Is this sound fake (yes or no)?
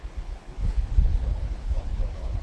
yes